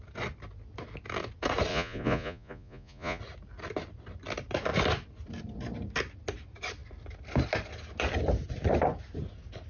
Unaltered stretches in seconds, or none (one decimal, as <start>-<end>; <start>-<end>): 0.0-1.7; 3.2-9.7